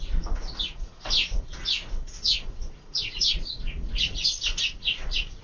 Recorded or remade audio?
remade